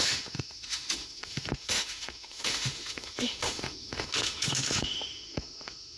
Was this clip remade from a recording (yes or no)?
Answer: yes